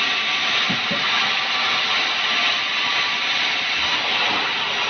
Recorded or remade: recorded